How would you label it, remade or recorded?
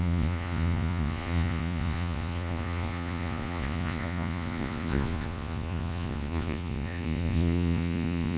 remade